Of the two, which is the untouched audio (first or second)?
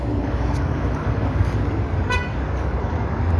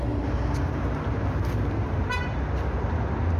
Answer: second